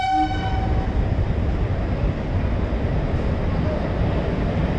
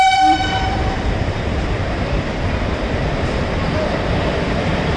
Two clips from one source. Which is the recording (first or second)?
first